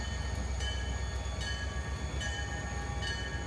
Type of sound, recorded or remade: recorded